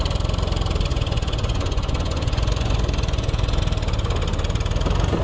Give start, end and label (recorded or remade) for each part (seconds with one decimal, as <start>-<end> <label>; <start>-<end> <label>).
0.0-0.9 recorded; 0.9-3.6 remade; 3.6-5.2 recorded